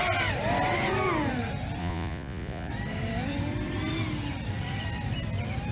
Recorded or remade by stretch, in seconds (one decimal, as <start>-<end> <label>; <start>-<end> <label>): 0.0-1.8 recorded; 1.8-2.7 remade; 2.7-5.7 recorded